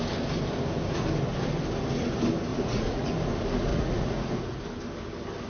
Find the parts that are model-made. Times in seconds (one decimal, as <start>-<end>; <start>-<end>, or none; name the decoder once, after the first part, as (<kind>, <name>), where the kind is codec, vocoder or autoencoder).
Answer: 2.5-3.1 (vocoder, Vocos); 3.7-4.6